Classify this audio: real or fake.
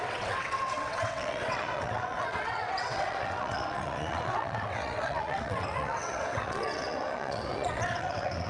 fake